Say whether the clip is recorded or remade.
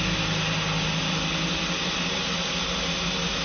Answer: recorded